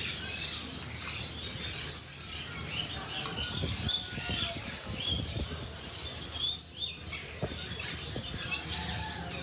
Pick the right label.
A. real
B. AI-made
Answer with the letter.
A